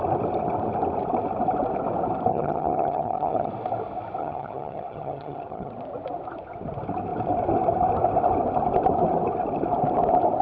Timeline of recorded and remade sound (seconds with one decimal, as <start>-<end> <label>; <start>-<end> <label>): 0.0-2.3 recorded; 2.3-3.5 remade; 3.5-4.2 recorded; 4.2-5.7 remade; 5.7-10.4 recorded